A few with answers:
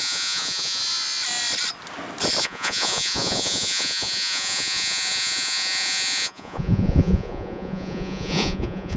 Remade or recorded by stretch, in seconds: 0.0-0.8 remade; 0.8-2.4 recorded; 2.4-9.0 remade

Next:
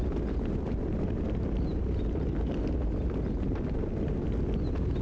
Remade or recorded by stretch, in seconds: 0.0-5.0 recorded

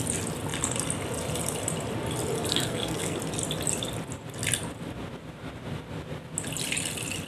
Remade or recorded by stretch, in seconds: 0.0-2.5 recorded; 2.5-3.2 remade; 3.2-7.3 recorded

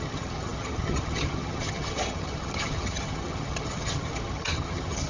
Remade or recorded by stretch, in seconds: 0.0-5.1 remade

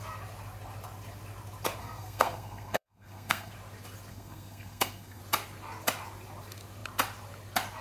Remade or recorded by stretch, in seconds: 0.0-1.8 recorded; 1.8-3.5 remade; 3.5-4.1 recorded; 4.1-5.2 remade; 5.2-7.8 recorded